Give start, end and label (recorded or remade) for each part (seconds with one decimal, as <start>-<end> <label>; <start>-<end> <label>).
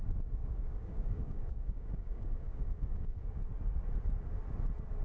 0.0-0.4 recorded; 0.4-3.4 remade; 3.4-5.0 recorded